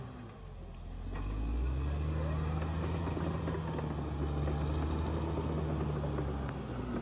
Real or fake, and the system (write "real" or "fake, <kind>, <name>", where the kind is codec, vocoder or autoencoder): real